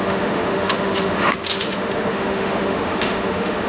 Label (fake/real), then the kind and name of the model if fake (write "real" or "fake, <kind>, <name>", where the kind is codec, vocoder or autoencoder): fake, autoencoder, DAC-VAE